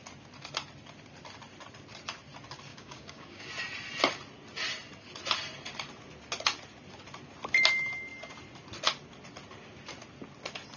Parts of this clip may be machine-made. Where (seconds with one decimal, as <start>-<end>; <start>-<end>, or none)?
2.7-3.5